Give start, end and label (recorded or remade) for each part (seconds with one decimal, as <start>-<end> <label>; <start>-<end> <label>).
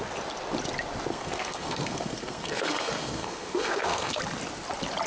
0.0-1.1 recorded; 1.1-4.2 remade; 4.2-5.1 recorded